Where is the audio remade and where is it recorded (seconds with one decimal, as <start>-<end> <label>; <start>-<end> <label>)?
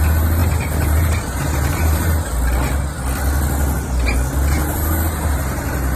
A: 0.0-0.4 recorded; 0.4-2.2 remade; 2.2-4.6 recorded; 4.6-5.6 remade; 5.6-6.0 recorded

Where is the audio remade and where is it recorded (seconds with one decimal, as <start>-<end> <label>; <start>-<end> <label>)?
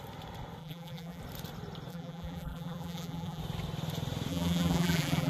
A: 0.0-0.6 recorded; 0.6-1.2 remade; 1.2-1.9 recorded; 1.9-3.4 remade; 3.4-4.3 recorded; 4.3-5.3 remade